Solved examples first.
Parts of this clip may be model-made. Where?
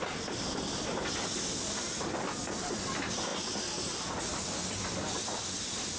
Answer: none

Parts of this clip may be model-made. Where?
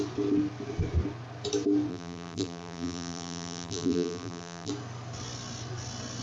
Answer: 1.9-4.7 (vocoder, BigVGAN v2)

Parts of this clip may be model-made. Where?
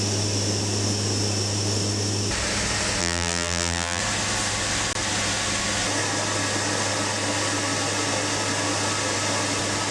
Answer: 3.0-4.0 (vocoder, BigVGAN v2)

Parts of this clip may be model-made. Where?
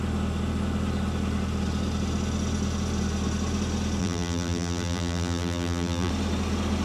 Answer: 4.0-6.1 (vocoder, BigVGAN v2)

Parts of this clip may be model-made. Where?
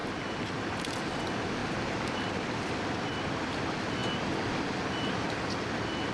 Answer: 0.0-0.9 (vocoder, BigVGAN v2); 1.6-2.3